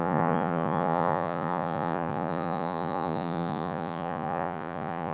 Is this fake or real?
fake